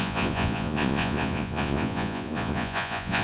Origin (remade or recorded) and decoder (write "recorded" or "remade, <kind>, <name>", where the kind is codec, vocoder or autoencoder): remade, vocoder, Vocos